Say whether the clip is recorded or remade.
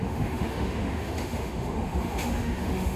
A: remade